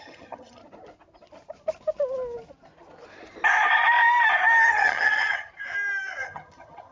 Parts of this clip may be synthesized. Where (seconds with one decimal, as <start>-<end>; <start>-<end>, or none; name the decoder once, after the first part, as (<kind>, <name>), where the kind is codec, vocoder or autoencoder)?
0.0-0.6 (vocoder, HiFi-GAN); 4.7-5.5; 6.2-6.9